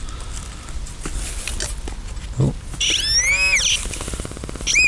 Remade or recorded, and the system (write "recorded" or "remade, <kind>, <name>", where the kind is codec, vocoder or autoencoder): recorded